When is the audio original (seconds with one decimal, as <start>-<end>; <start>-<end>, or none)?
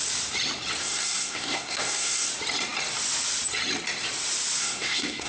0.0-0.8; 2.3-4.6